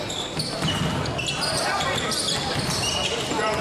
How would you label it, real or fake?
real